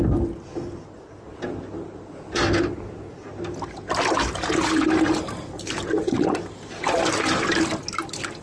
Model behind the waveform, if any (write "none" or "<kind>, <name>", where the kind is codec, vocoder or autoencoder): none